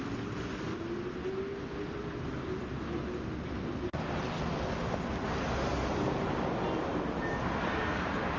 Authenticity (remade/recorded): recorded